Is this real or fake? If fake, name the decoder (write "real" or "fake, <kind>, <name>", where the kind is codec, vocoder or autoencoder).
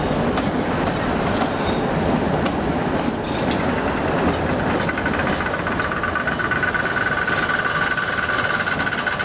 real